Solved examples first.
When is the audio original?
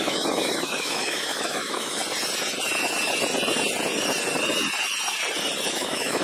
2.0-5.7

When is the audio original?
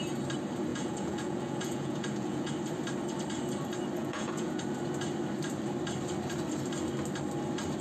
0.0-0.7; 2.5-4.0; 4.6-7.8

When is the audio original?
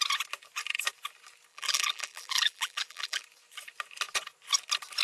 0.0-1.5; 3.2-5.0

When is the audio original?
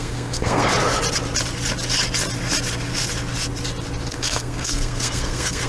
0.7-4.1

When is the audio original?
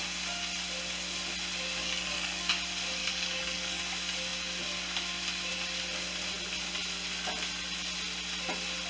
0.0-1.8; 2.5-3.0; 3.8-8.9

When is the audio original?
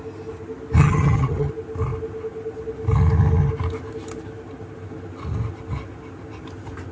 0.0-0.8; 1.5-6.9